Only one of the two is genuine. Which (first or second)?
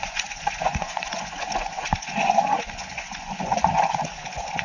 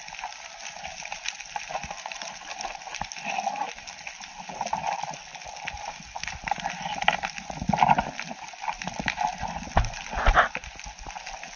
second